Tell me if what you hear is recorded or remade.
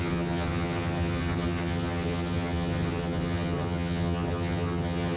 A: remade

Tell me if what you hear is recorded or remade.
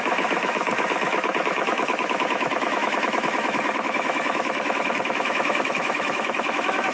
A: remade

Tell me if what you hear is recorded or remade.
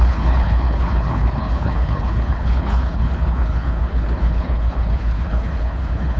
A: remade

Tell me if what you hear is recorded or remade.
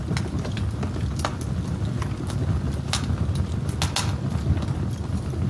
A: recorded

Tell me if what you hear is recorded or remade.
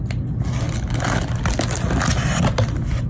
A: recorded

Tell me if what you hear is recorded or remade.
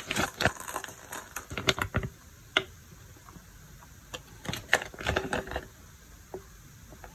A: remade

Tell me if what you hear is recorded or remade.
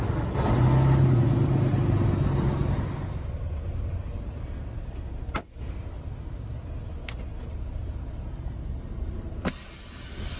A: recorded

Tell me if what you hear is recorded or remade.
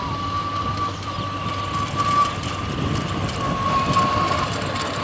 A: recorded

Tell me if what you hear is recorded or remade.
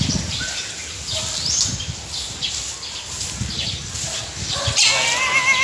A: recorded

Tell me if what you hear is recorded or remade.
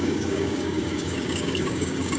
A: remade